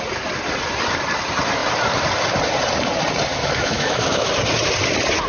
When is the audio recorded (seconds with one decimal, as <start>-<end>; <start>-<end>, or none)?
0.0-3.3; 4.3-5.3